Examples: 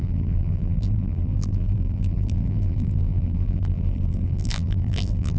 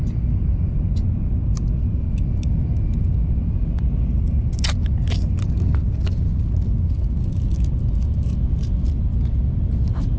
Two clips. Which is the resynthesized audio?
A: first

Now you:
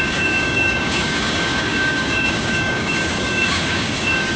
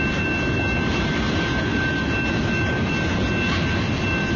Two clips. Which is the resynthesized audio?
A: first